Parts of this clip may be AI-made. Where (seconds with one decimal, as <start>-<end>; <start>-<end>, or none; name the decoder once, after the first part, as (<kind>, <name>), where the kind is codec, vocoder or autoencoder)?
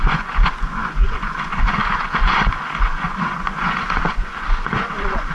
0.0-5.3 (vocoder, Vocos)